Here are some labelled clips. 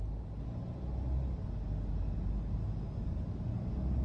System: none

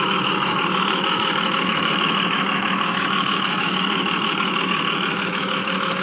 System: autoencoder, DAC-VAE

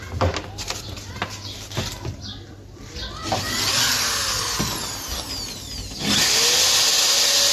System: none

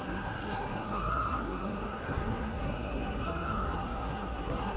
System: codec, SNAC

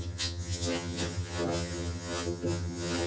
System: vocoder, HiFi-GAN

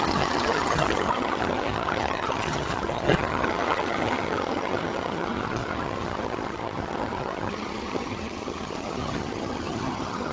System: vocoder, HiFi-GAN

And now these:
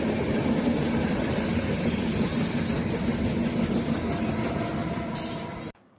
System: none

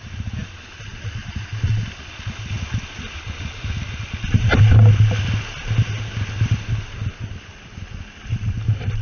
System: none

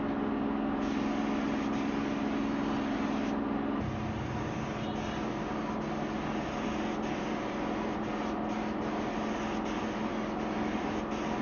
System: none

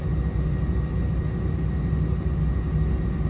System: none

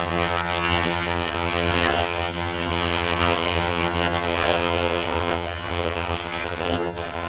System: vocoder, HiFi-GAN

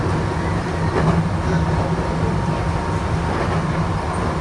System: none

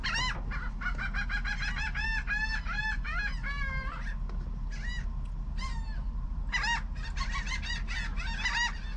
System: none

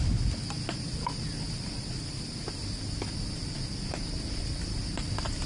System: none